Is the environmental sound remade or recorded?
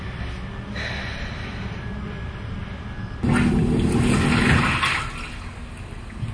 recorded